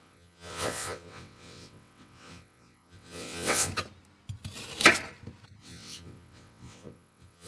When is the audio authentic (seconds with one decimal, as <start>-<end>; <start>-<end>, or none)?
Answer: 3.7-5.6